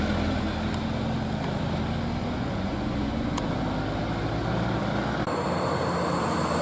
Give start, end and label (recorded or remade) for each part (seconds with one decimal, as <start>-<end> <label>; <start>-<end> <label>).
0.0-2.2 recorded; 2.2-3.6 remade; 3.6-6.6 recorded